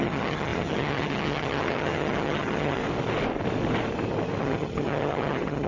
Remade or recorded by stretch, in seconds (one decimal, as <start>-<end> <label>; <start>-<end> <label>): 0.0-2.8 remade; 2.8-4.4 recorded; 4.4-5.7 remade